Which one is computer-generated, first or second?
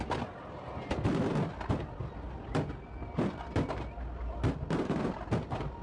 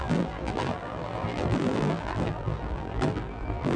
second